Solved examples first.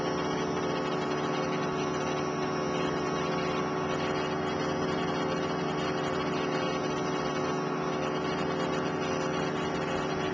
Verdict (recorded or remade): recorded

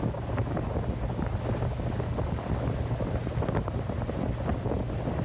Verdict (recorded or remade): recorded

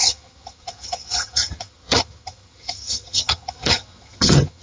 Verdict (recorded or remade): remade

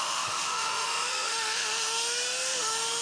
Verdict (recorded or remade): remade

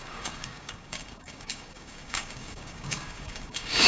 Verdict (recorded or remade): remade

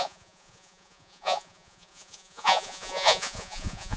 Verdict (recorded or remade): remade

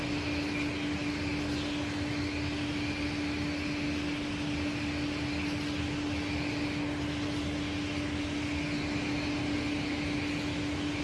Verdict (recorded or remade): recorded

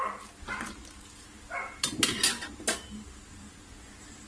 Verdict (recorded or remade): recorded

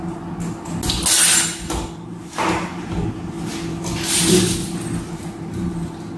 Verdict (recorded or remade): recorded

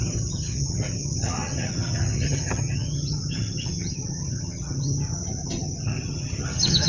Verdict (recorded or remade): remade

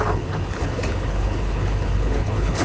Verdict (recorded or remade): remade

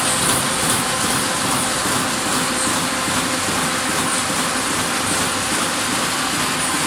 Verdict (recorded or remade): recorded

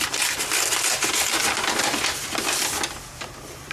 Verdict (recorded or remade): recorded